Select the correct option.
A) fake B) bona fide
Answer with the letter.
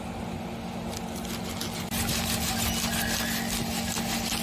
B